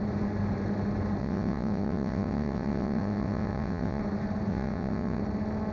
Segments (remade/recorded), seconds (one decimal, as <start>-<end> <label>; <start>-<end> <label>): 0.0-1.2 recorded; 1.2-4.0 remade; 4.0-4.5 recorded; 4.5-5.2 remade; 5.2-5.7 recorded